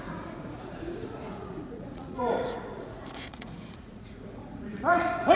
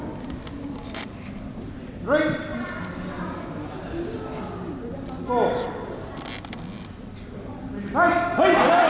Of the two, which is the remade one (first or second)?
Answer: first